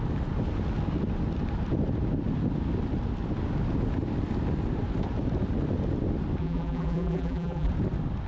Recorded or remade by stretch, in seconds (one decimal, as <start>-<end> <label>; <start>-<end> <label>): 0.0-6.4 recorded; 6.4-7.7 remade; 7.7-8.3 recorded